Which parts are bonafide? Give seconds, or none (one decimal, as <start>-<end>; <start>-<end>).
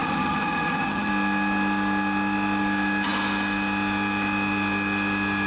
1.1-5.5